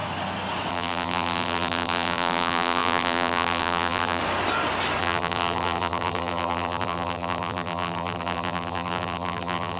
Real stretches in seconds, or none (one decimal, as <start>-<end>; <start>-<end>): 0.0-0.7; 4.2-5.0